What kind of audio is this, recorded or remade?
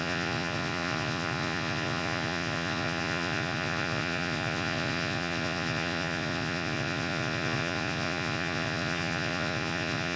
remade